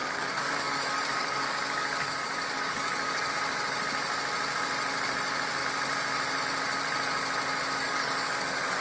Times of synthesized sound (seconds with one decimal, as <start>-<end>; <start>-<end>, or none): 0.0-3.3; 7.8-8.4